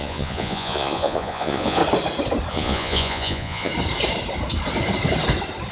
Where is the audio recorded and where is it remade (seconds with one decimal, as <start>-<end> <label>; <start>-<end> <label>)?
0.0-1.8 remade; 1.8-2.5 recorded; 2.5-3.7 remade; 3.7-5.7 recorded